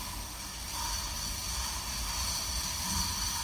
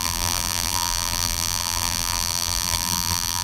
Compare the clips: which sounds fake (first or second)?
second